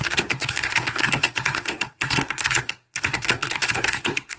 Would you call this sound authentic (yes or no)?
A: no